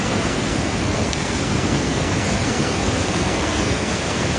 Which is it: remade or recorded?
remade